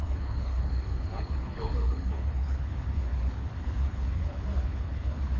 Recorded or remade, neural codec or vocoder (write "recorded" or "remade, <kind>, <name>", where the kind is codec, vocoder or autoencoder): remade, codec, HILCodec